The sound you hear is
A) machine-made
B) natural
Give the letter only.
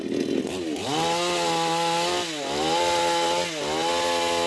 B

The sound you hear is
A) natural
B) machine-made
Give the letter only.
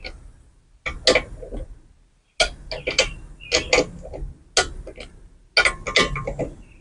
A